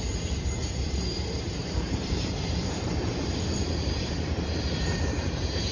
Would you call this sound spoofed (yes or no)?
yes